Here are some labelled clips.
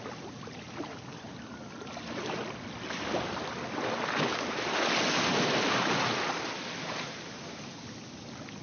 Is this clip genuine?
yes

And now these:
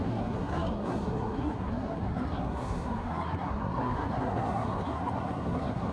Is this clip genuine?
no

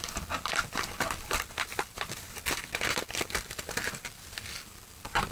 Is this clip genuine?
no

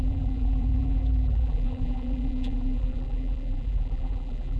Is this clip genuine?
no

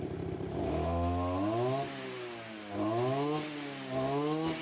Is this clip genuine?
yes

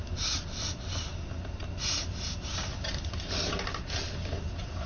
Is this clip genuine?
yes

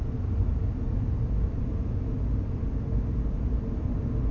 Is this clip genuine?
yes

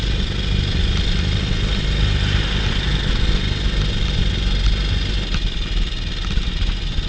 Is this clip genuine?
yes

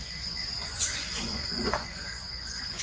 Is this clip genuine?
no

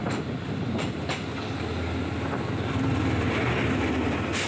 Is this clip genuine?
yes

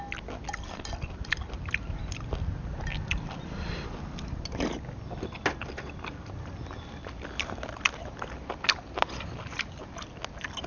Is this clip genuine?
yes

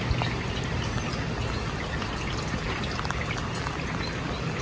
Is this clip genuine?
yes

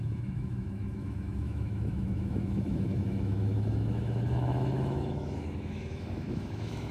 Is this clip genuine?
no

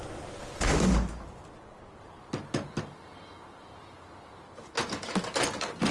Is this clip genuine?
yes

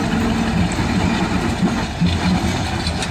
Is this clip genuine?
yes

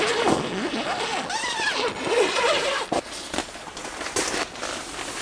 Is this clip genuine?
yes